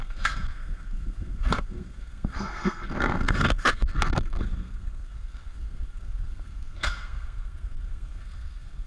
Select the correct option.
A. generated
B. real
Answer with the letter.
A